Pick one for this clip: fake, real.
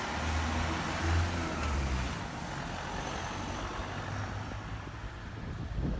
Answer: real